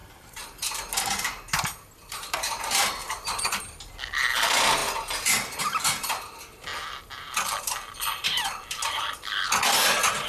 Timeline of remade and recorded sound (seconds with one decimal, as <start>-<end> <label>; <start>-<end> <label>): 0.0-0.8 remade; 0.8-3.0 recorded; 3.0-3.6 remade; 3.6-10.3 recorded